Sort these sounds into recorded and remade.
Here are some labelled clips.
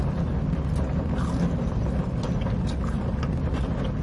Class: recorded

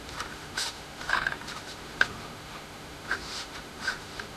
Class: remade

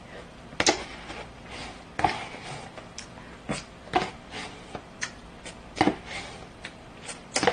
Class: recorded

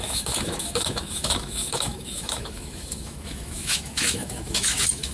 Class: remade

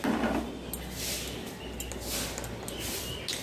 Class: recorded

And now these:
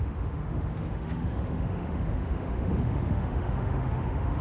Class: remade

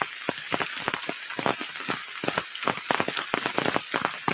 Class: recorded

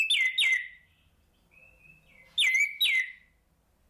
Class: recorded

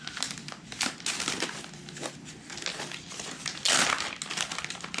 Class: recorded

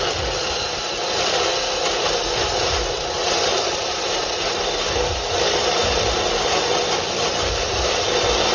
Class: recorded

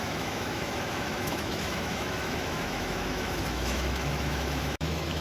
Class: remade